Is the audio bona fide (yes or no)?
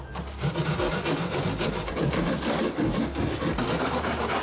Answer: yes